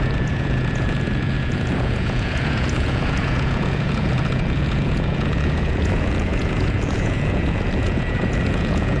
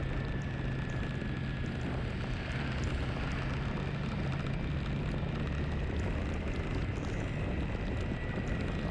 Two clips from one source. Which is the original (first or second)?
second